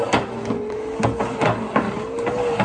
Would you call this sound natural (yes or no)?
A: yes